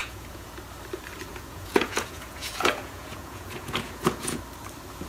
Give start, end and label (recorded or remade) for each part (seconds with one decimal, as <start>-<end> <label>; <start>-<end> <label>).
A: 0.0-0.6 remade; 0.6-1.3 recorded; 1.3-4.4 remade; 4.4-5.1 recorded